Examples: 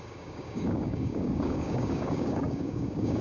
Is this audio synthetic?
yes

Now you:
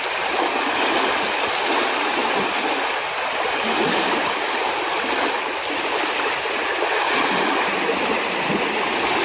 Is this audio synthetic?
no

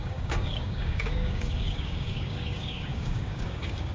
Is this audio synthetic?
yes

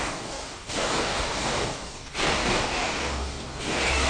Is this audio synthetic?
yes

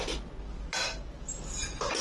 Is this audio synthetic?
no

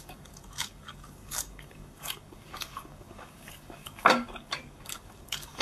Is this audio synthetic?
yes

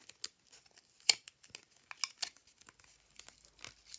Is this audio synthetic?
no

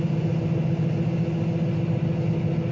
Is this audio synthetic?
no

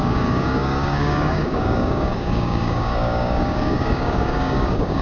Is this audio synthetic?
yes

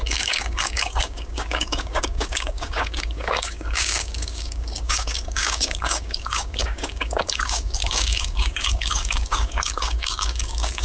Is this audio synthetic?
yes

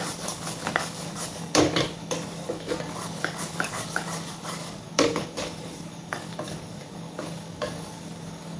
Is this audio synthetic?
yes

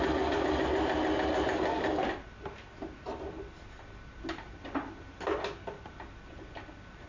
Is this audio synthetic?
no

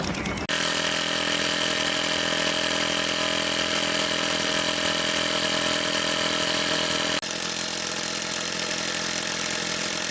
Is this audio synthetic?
no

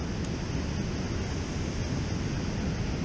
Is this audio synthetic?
no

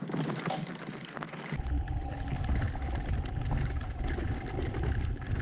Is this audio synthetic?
no